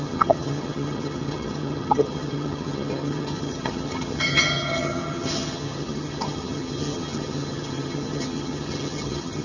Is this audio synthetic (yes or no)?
yes